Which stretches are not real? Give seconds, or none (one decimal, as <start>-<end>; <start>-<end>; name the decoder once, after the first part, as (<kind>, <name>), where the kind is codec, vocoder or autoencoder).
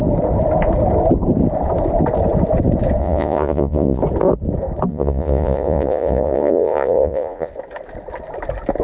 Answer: 3.0-4.0 (vocoder, Vocos); 4.9-7.5